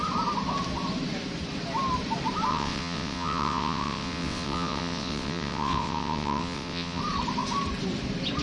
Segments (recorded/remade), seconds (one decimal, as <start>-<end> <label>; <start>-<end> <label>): 0.0-2.5 recorded; 2.5-7.0 remade; 7.0-8.4 recorded